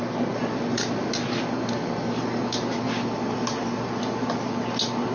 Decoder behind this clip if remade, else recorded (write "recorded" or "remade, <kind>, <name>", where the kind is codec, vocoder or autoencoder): recorded